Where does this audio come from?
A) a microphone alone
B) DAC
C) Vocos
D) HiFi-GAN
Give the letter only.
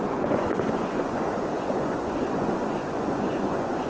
C